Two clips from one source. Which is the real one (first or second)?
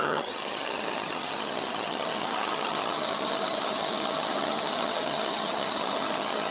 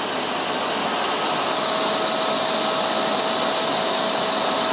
second